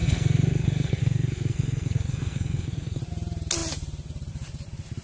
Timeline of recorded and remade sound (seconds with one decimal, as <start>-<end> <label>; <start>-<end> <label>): 0.0-3.0 remade; 3.0-5.0 recorded